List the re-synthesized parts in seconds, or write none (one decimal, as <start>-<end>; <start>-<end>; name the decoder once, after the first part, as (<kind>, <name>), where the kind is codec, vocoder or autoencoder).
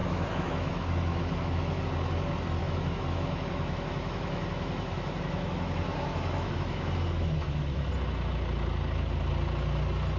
0.0-1.8 (autoencoder, DAC-VAE); 2.6-7.9